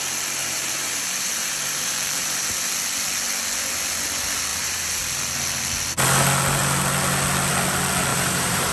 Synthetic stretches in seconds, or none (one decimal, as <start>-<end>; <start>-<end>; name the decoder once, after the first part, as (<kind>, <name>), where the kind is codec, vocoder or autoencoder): 0.4-2.7 (vocoder, BigVGAN v2); 4.5-5.0; 8.1-8.7